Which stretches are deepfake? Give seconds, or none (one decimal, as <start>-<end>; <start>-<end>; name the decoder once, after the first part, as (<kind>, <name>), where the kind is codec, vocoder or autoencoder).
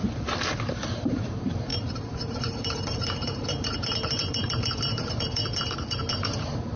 0.7-6.8 (vocoder, BigVGAN v2)